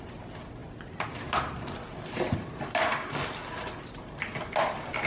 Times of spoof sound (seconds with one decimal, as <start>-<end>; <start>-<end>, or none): none

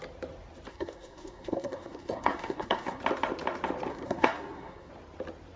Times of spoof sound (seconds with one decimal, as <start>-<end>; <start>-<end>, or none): 0.7-3.0; 3.9-4.9

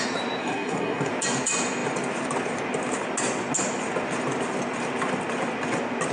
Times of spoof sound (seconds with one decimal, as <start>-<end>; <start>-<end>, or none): 0.4-1.1

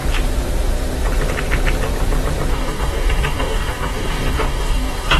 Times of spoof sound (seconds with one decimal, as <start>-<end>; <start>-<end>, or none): 2.5-5.2

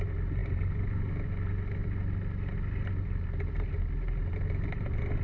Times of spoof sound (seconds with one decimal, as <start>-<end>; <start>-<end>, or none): none

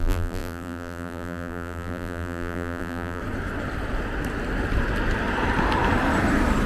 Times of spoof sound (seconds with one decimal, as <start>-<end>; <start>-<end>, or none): 0.0-3.2

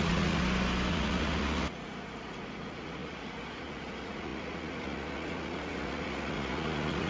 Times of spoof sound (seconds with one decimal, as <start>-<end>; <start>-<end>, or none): 0.0-0.4; 0.9-7.1